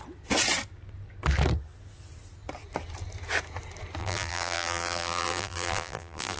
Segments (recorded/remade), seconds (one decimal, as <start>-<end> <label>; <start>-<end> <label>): 0.0-4.0 recorded; 4.0-6.4 remade